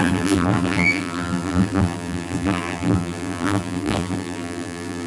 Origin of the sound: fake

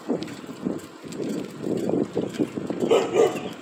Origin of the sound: real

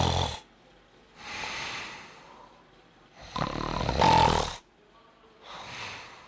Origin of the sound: real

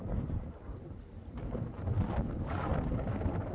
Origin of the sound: real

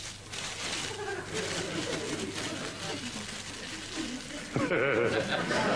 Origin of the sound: real